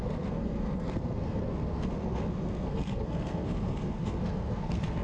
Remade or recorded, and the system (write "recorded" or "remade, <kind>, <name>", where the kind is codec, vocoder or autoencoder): remade, codec, SNAC